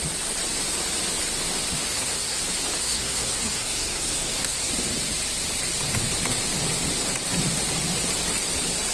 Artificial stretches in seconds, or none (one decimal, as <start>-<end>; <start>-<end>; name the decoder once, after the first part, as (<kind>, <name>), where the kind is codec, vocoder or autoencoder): 1.9-2.4 (codec, SNAC); 2.8-4.7